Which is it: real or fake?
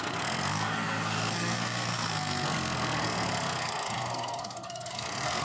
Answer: fake